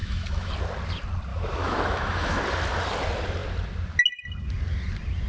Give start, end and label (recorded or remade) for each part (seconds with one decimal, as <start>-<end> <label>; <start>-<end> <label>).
0.0-0.5 remade; 0.5-1.3 recorded; 1.3-2.4 remade; 2.4-5.3 recorded